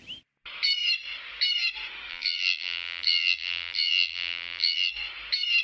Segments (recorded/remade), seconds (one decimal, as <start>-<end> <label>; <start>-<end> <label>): 0.0-2.1 recorded; 2.1-4.9 remade; 4.9-5.6 recorded